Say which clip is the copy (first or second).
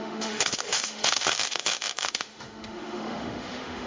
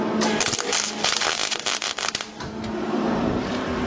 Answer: first